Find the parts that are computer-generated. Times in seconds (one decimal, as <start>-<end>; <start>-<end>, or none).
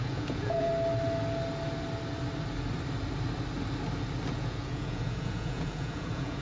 0.0-0.7; 4.3-6.4